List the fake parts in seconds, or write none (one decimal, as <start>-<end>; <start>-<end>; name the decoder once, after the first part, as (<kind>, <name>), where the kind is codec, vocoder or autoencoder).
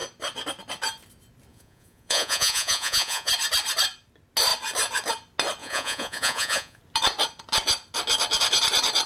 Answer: 1.5-3.3 (vocoder, Vocos); 5.6-6.8